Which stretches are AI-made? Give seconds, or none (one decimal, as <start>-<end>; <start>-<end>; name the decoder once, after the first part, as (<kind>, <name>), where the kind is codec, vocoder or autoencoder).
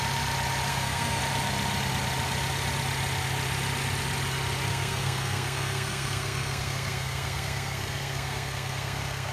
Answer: 0.7-1.2 (codec, SNAC); 4.7-9.3